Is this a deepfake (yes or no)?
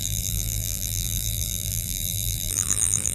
yes